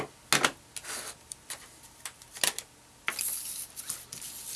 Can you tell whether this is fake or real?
real